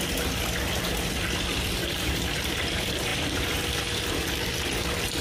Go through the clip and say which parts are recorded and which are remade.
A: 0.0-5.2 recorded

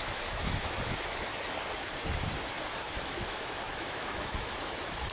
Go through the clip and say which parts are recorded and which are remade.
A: 0.0-1.3 remade; 1.3-2.7 recorded; 2.7-5.1 remade